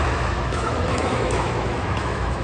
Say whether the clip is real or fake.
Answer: fake